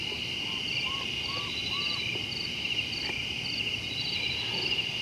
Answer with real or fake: real